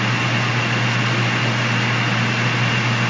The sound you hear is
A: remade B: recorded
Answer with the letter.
B